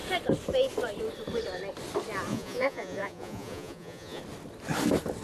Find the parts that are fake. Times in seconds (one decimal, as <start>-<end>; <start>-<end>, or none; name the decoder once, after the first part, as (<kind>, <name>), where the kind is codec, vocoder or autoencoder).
2.3-4.2 (vocoder, Vocos)